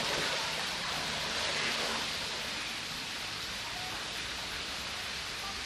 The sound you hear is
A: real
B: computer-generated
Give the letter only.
A